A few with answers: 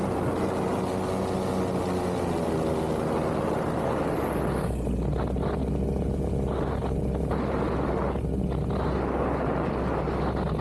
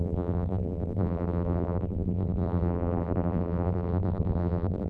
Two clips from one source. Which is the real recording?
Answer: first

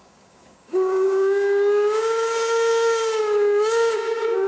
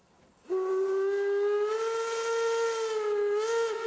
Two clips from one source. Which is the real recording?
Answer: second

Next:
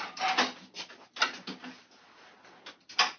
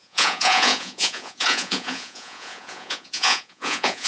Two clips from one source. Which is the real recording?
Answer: first